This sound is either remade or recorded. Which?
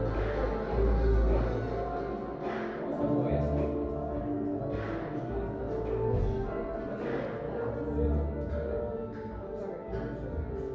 recorded